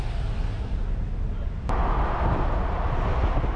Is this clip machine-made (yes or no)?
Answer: no